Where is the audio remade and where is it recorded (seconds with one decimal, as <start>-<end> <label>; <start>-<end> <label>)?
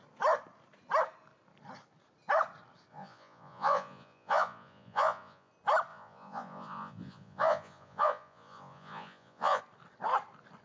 0.0-2.9 recorded; 2.9-5.5 remade; 5.5-5.9 recorded; 5.9-9.6 remade; 9.6-10.6 recorded